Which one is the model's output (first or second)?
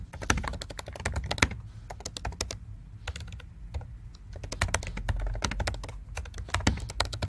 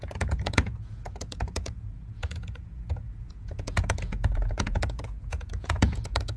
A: second